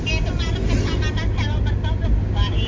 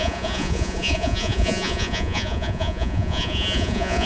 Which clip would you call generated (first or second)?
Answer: second